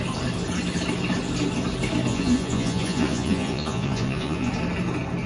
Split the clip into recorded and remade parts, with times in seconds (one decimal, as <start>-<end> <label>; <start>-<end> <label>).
0.0-2.1 recorded; 2.1-4.5 remade; 4.5-5.3 recorded